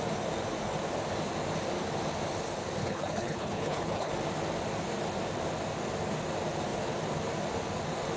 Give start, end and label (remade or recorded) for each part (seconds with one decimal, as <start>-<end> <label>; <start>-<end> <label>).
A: 0.0-2.8 recorded; 2.8-4.1 remade; 4.1-8.2 recorded